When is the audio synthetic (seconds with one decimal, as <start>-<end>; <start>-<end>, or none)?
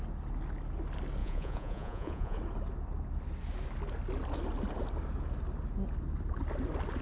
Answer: 1.2-2.4